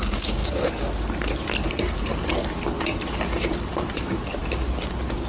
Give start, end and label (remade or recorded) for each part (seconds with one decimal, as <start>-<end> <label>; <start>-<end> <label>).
0.0-0.4 remade; 0.4-1.7 recorded; 1.7-2.1 remade; 2.1-3.0 recorded; 3.0-4.4 remade; 4.4-5.3 recorded